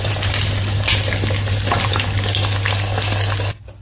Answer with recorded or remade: recorded